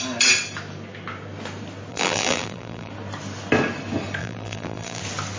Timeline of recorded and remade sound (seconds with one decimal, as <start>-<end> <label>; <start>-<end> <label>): 0.0-1.9 recorded; 1.9-2.9 remade; 2.9-4.2 recorded; 4.2-5.0 remade; 5.0-5.4 recorded